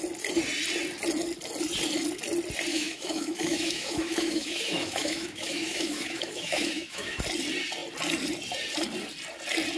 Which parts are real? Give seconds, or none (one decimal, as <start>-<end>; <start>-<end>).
0.0-2.7; 7.2-9.8